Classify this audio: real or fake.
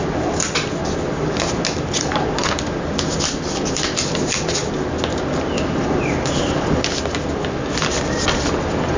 real